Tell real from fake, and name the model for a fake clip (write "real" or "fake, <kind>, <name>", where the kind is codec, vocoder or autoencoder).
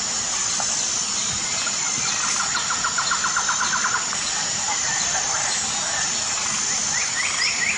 real